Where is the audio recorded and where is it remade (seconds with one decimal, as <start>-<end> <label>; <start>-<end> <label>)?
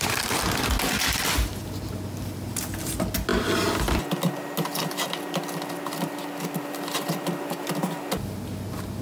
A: 0.0-9.0 recorded